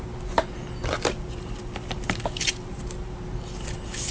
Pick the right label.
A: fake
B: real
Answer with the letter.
B